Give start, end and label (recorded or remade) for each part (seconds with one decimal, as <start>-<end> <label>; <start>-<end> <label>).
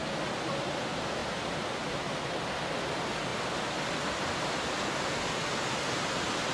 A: 0.0-6.5 recorded